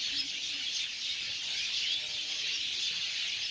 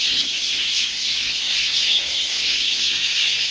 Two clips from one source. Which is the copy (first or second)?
second